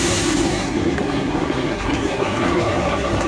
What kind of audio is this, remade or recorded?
remade